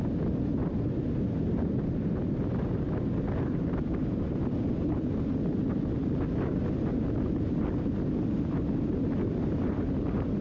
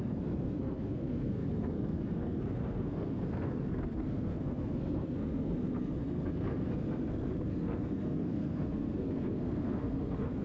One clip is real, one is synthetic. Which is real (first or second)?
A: first